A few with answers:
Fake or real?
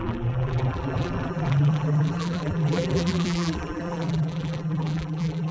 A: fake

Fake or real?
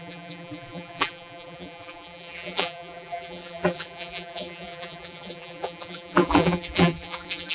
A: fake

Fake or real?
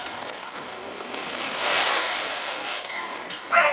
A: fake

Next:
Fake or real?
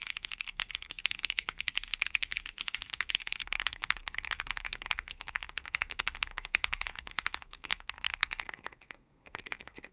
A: fake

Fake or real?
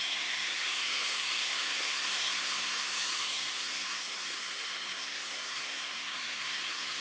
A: fake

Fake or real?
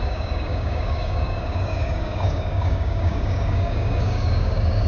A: fake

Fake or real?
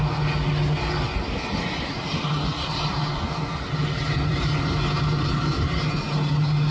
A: real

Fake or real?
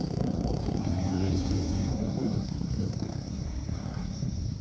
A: fake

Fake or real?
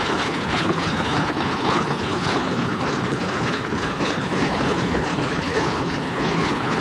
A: fake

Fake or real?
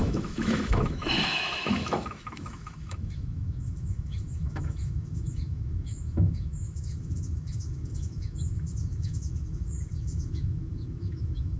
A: fake